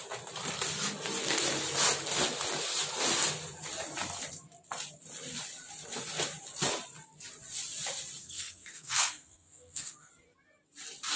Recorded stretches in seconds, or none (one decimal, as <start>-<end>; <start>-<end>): 0.0-8.2; 10.1-11.2